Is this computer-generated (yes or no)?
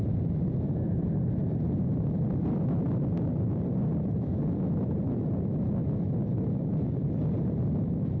no